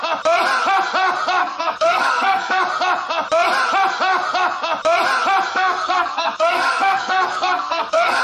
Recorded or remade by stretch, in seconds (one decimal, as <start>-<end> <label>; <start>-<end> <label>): 0.0-1.4 recorded; 1.4-2.6 remade; 2.6-5.5 recorded; 5.5-8.2 remade